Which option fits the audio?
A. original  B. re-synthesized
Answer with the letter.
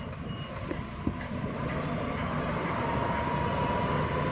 A